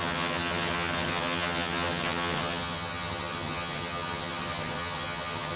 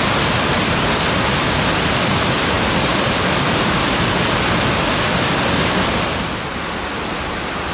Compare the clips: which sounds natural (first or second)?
second